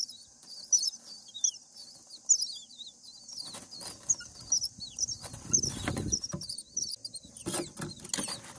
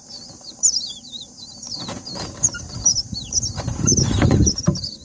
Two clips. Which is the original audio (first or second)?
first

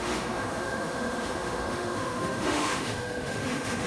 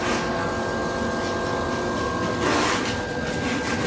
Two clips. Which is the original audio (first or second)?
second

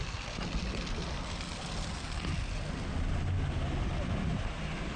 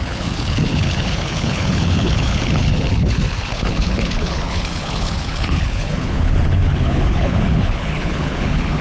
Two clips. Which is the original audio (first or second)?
first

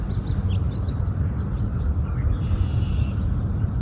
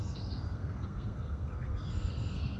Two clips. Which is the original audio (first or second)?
first